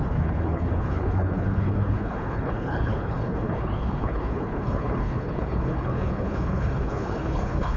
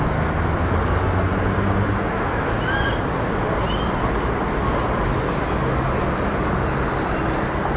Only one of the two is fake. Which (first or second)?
first